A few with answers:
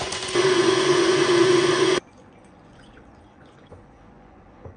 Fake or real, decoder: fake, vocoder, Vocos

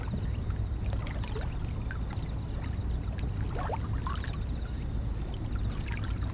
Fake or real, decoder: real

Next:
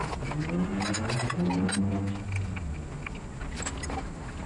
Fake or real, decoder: real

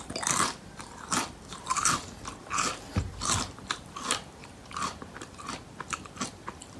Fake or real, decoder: fake, vocoder, BigVGAN v2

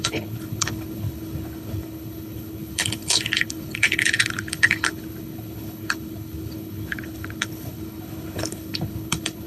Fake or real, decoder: fake, codec, HILCodec